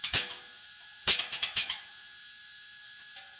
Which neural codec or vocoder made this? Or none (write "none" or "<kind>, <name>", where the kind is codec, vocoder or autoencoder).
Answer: autoencoder, DAC-VAE